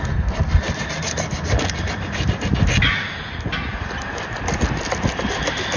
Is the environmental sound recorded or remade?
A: recorded